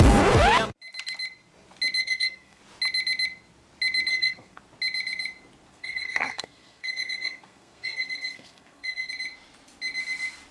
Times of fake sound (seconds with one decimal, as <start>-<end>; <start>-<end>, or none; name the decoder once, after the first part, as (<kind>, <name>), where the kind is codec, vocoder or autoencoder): 2.0-2.6 (codec, SNAC); 4.1-4.6; 5.7-9.1

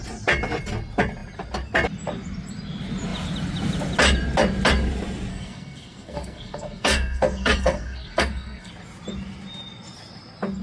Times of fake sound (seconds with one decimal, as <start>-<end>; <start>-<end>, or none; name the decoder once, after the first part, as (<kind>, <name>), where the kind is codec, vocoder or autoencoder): 5.3-8.7 (codec, SNAC)